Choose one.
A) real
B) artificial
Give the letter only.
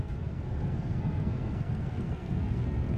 B